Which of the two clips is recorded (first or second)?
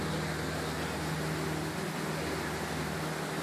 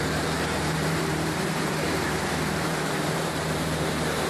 first